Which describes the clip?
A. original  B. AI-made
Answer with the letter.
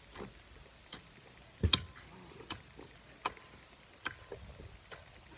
A